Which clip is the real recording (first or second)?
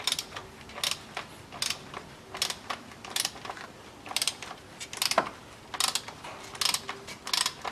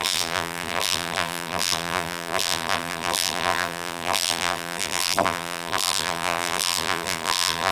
first